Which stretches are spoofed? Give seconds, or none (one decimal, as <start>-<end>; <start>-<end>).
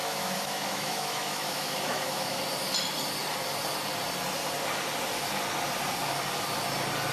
0.0-2.4